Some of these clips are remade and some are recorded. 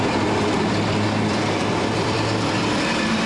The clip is remade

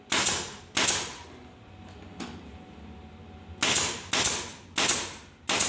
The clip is recorded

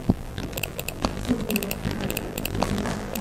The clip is remade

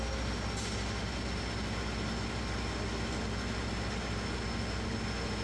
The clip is recorded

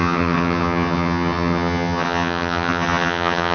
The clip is remade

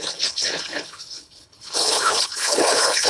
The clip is remade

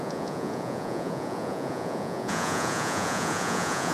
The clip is remade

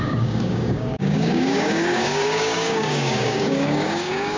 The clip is remade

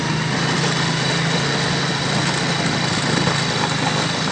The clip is recorded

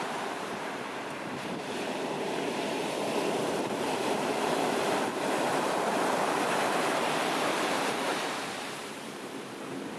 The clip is remade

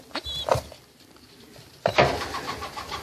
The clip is recorded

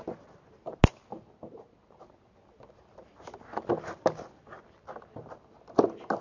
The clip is recorded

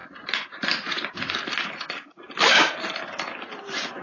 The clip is recorded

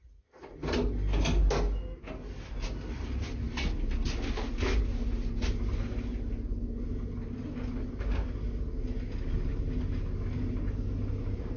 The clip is recorded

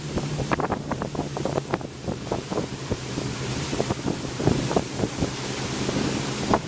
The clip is remade